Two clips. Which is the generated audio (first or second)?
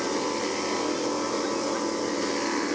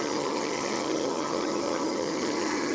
second